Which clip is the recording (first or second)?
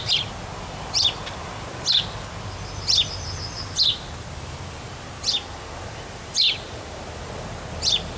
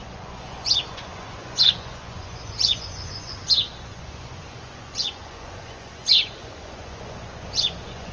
first